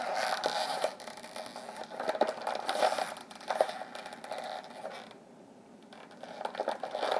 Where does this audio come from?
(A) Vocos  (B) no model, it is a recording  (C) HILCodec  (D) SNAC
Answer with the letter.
B